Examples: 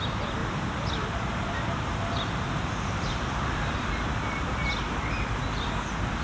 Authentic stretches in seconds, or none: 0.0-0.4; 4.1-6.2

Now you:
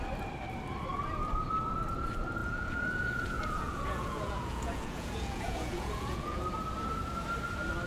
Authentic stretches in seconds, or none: 0.0-2.4; 6.4-7.9

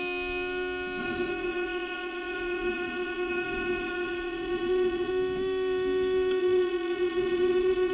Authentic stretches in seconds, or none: 0.0-1.0; 5.1-6.4

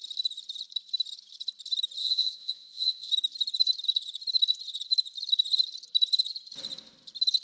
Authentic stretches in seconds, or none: 0.0-2.0; 3.1-7.4